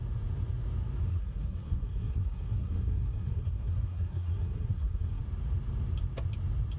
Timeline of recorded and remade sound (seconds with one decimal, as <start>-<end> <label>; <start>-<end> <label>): 0.0-1.1 recorded; 1.1-5.2 remade; 5.2-6.8 recorded